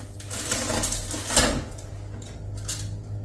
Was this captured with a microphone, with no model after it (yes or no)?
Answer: yes